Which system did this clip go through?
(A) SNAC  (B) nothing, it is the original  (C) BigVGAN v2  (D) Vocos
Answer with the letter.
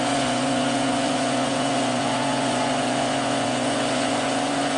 D